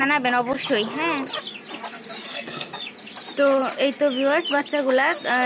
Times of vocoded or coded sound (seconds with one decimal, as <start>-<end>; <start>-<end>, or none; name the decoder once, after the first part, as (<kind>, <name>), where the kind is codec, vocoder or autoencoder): 2.3-2.8 (codec, SNAC)